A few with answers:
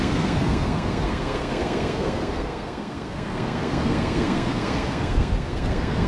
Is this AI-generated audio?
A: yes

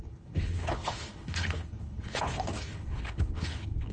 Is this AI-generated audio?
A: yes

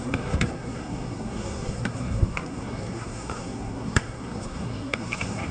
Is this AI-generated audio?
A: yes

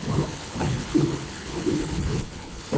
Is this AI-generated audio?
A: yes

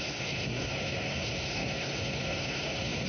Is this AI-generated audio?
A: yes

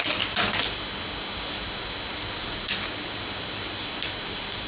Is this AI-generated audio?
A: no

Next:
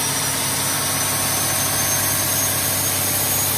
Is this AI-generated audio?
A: no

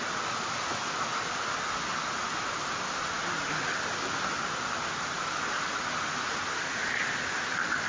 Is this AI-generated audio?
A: no